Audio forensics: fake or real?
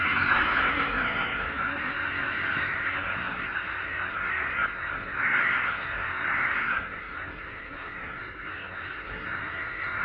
fake